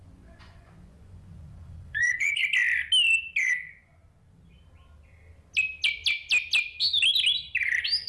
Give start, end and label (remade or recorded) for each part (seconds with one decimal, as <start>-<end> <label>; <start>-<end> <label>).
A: 0.0-2.4 remade; 2.4-3.4 recorded; 3.4-4.0 remade; 4.0-8.1 recorded